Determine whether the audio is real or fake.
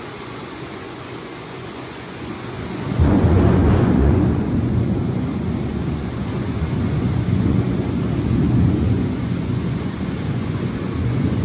fake